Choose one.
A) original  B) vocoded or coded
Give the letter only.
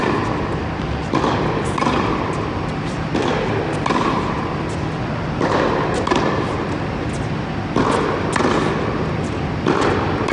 A